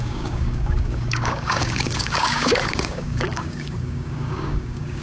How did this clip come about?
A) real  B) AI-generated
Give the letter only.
B